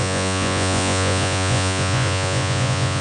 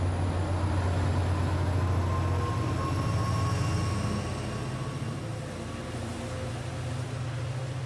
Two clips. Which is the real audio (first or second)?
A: second